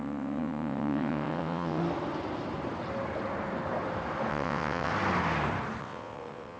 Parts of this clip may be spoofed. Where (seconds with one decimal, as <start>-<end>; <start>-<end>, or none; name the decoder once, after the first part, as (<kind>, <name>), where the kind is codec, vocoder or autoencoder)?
0.0-1.8 (vocoder, WaveNeXt); 4.3-4.9; 5.8-6.6